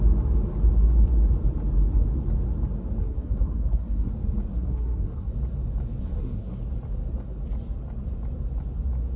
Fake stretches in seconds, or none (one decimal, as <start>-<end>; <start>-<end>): 3.0-4.1; 4.5-5.3; 6.0-6.6